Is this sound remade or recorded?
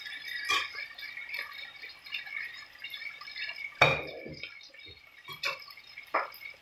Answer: recorded